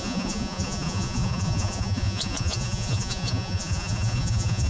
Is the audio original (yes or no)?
no